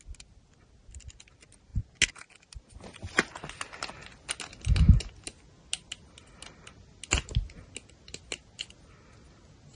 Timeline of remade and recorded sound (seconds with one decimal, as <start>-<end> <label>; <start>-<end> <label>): 0.0-9.8 recorded